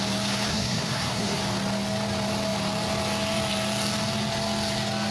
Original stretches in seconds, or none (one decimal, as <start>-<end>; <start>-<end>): 0.0-0.5; 1.4-5.1